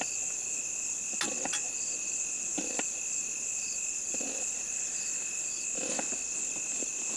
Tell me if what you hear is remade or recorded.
recorded